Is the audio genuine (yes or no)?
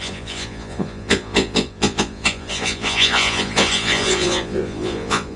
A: no